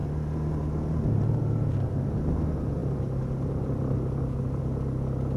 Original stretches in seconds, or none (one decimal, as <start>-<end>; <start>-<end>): 0.0-5.4